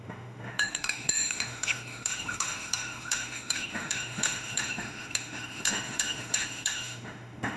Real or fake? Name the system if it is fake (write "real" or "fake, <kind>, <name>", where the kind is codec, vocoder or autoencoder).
fake, autoencoder, DAC-VAE